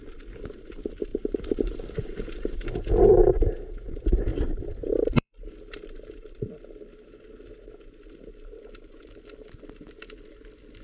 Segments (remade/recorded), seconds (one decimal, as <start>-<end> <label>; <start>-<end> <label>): 0.0-1.1 recorded; 1.1-2.9 remade; 2.9-4.3 recorded; 4.3-6.5 remade; 6.5-10.8 recorded